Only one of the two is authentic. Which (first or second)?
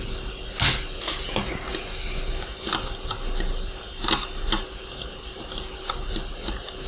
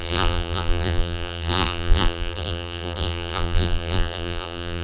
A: first